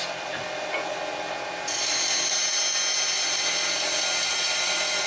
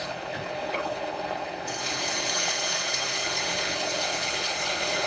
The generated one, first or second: second